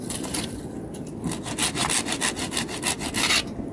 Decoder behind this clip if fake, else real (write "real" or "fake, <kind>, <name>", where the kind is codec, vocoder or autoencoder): real